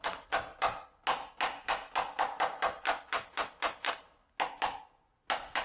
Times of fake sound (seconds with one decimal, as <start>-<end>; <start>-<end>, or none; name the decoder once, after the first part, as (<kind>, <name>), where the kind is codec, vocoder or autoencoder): none